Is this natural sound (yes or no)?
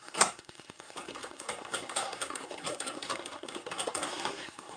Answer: no